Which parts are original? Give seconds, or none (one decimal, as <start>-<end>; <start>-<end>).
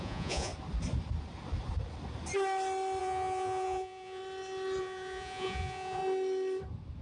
0.5-3.0; 4.2-4.8; 6.0-7.0